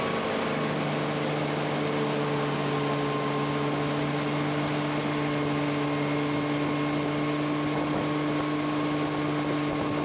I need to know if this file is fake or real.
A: real